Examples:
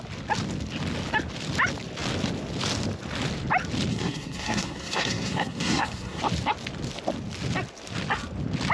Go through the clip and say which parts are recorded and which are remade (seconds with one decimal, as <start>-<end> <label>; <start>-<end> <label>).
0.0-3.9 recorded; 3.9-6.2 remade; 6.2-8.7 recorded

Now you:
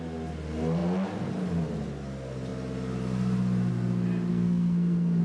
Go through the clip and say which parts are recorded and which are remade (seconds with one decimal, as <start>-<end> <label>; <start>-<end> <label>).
0.0-4.3 recorded; 4.3-5.2 remade

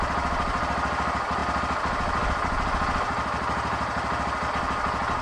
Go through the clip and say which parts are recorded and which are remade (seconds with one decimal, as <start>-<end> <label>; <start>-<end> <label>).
0.0-5.2 recorded